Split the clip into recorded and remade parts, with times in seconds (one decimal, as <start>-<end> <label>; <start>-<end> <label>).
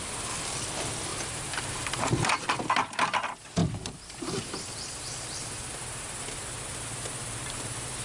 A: 0.0-1.1 recorded; 1.1-2.6 remade; 2.6-3.6 recorded; 3.6-6.4 remade; 6.4-8.0 recorded